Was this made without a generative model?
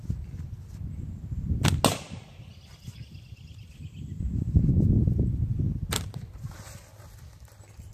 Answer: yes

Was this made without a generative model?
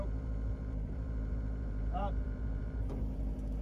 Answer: no